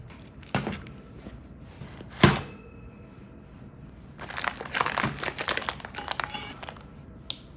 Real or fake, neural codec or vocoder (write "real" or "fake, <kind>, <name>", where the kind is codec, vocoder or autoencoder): real